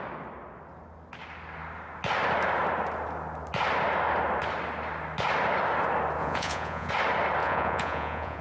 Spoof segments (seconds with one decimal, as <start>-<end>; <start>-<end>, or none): 6.2-6.9; 7.4-8.4